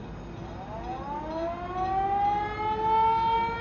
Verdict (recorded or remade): recorded